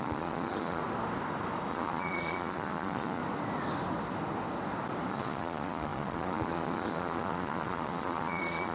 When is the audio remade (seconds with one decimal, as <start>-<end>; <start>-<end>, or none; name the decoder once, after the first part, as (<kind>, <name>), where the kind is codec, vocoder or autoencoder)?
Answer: 0.0-0.8 (vocoder, Vocos); 1.7-3.2; 5.1-8.7

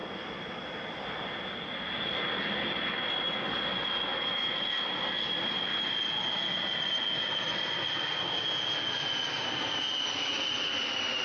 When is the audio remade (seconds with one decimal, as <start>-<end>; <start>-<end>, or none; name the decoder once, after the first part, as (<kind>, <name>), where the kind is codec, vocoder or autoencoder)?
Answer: none

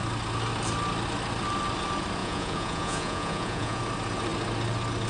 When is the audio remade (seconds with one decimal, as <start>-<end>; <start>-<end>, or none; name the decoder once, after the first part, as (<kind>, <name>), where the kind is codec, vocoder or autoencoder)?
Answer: 2.2-3.8 (vocoder, Vocos)

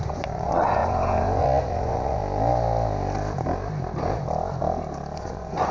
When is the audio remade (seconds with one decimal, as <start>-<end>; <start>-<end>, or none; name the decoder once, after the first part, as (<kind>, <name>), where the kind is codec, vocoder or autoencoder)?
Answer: 0.0-2.2 (vocoder, Vocos); 5.2-5.7

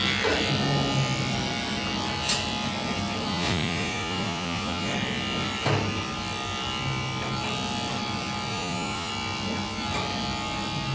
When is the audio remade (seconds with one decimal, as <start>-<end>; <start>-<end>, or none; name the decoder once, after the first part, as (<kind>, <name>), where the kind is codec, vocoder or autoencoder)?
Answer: 3.3-4.9 (vocoder, Vocos); 8.5-9.1